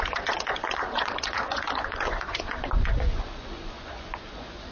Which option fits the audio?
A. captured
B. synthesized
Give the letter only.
B